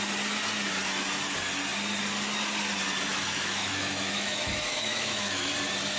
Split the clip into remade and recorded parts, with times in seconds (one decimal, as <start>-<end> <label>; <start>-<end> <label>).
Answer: 0.0-3.1 recorded; 3.1-5.5 remade; 5.5-6.0 recorded